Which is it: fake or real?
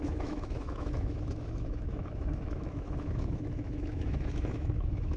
fake